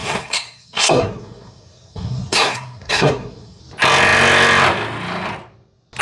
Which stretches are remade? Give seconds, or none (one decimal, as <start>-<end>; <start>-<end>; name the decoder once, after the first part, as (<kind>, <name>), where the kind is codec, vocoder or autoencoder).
0.0-3.6 (codec, SNAC)